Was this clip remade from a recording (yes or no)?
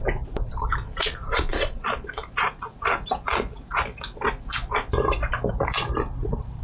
yes